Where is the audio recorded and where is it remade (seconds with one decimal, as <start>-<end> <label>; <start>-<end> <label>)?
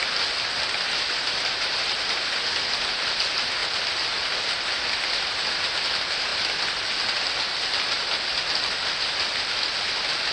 0.0-10.3 recorded